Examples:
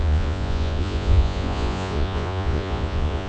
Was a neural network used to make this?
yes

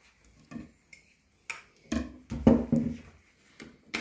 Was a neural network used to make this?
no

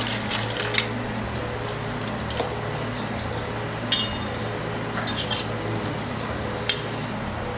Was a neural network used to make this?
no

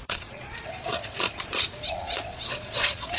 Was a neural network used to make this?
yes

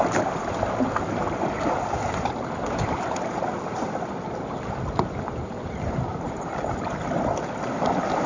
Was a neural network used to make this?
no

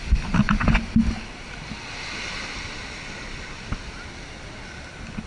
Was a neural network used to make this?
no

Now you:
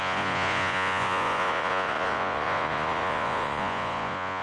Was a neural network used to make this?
yes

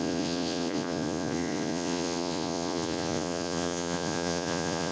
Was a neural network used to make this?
yes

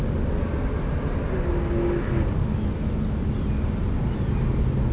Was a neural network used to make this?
no